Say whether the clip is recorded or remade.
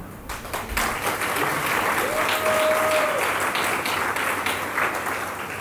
recorded